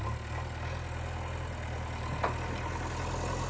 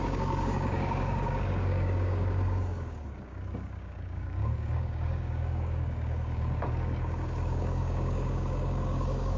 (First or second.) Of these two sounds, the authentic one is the first